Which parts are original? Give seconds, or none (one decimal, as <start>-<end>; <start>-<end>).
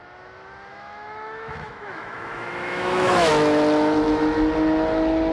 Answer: 0.0-0.7; 3.3-5.3